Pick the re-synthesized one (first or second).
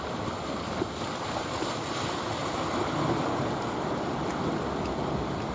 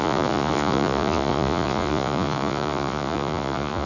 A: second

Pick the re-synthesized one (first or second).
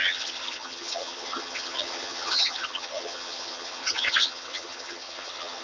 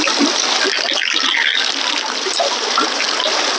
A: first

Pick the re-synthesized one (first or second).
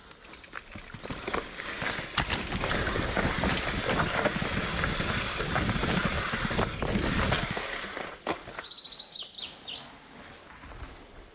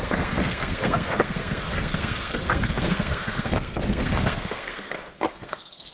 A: second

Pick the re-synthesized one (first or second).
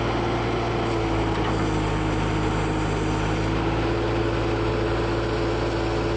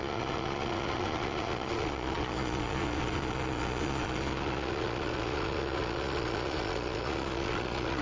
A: second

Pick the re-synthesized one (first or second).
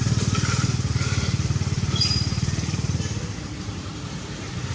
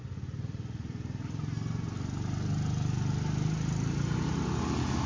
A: first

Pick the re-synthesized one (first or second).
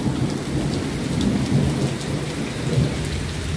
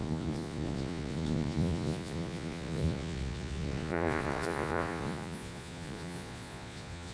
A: second